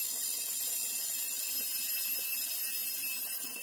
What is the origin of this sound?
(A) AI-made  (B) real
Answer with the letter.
B